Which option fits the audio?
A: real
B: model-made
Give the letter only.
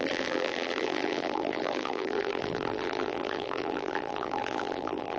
B